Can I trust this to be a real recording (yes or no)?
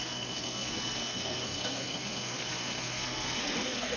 no